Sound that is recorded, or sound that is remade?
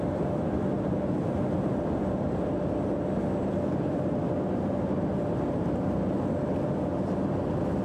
recorded